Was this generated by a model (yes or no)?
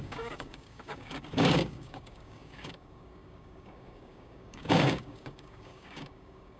yes